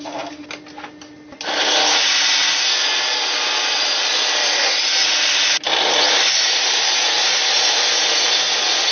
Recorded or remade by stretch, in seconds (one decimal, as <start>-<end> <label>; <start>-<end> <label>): 0.0-8.9 recorded